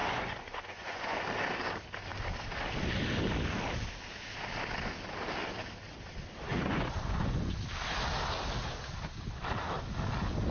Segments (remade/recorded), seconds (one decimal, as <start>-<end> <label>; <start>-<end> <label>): 0.0-1.2 remade; 1.2-6.5 recorded; 6.5-7.6 remade; 7.6-10.5 recorded